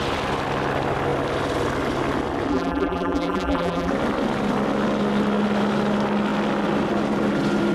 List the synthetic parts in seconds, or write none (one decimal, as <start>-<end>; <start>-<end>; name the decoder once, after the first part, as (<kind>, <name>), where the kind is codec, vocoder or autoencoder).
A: 2.5-3.9 (vocoder, BigVGAN v2)